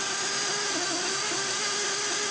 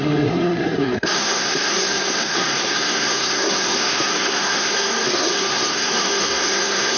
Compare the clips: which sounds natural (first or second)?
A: first